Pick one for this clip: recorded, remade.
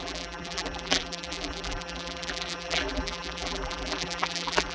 remade